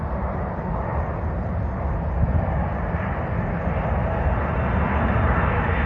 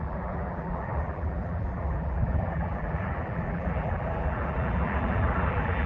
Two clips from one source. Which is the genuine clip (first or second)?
first